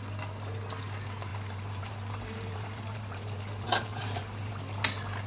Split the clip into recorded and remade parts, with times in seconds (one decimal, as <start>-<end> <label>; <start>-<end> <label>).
0.0-1.3 recorded; 1.3-4.5 remade; 4.5-5.3 recorded